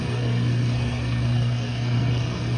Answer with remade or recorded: remade